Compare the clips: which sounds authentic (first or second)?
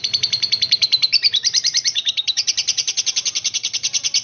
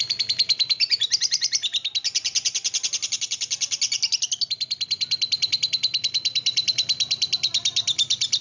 second